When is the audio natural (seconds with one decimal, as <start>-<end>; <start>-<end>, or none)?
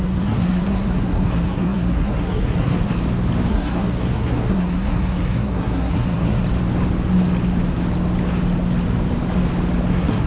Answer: 2.9-3.5; 6.4-9.9